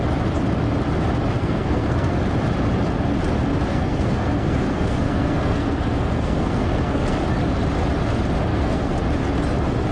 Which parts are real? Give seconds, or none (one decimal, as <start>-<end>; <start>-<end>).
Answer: 0.0-1.3; 2.2-3.7; 7.2-8.5; 9.0-9.9